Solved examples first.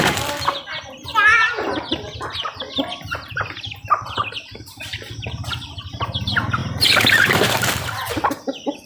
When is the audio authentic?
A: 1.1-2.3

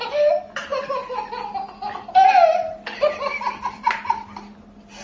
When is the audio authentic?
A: 0.0-5.0

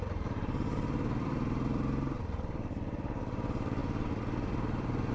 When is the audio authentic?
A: 2.8-3.8

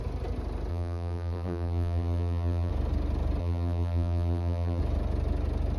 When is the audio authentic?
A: 0.0-0.7; 2.7-3.4; 4.8-5.8

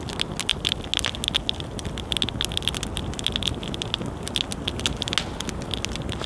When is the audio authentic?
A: 0.0-6.3

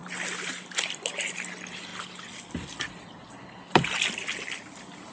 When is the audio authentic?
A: 0.0-5.1

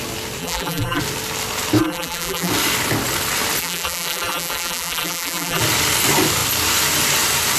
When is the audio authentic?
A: 0.0-0.4; 1.0-1.8; 2.5-3.6; 5.6-7.6

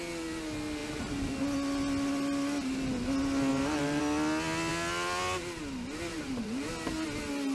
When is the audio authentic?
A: 0.0-0.8; 1.3-3.5; 4.0-6.1; 6.7-7.5